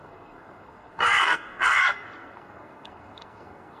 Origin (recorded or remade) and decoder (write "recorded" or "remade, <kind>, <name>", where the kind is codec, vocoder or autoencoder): remade, codec, SNAC